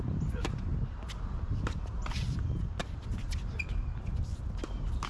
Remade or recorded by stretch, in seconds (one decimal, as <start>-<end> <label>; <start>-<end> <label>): 0.0-5.1 recorded